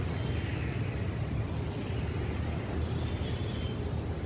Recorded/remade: recorded